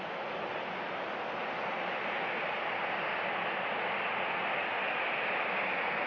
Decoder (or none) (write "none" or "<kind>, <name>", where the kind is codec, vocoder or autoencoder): none